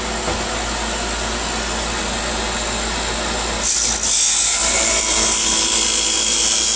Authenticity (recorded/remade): recorded